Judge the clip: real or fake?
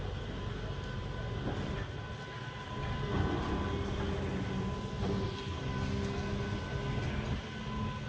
real